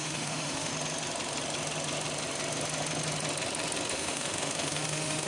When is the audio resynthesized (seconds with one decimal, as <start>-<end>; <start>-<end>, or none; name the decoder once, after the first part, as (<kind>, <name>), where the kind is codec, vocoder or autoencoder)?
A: 0.0-0.7 (autoencoder, DAC-VAE); 3.9-5.3